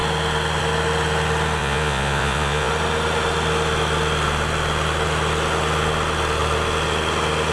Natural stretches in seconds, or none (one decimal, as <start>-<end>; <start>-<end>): 0.0-1.6; 2.7-7.5